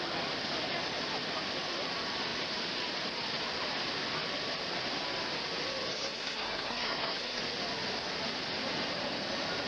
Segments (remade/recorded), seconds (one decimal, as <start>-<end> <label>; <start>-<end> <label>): 0.0-5.9 recorded; 5.9-7.4 remade; 7.4-9.7 recorded